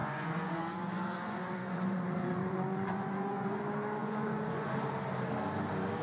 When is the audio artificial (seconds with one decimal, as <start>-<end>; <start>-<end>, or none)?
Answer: 0.0-3.6; 4.0-4.7